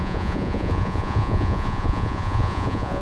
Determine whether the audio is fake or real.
fake